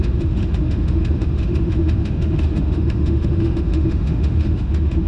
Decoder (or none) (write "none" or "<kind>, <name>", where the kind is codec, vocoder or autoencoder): autoencoder, DAC-VAE